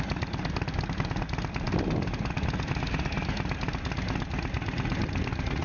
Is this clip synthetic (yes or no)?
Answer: no